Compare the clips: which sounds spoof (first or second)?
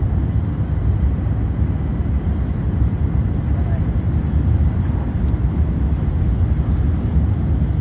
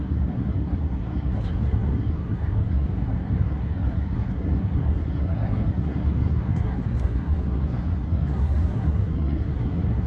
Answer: second